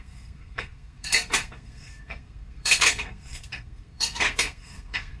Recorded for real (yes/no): no